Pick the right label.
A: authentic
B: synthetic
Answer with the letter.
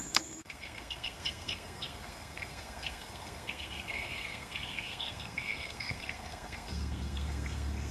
B